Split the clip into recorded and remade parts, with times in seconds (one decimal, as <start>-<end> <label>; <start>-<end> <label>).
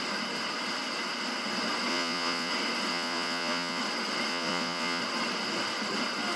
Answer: 0.0-1.9 recorded; 1.9-2.5 remade; 2.5-2.9 recorded; 2.9-3.8 remade; 3.8-4.3 recorded; 4.3-5.0 remade; 5.0-6.4 recorded